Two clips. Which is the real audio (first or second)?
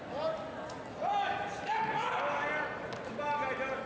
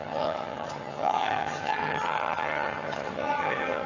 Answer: first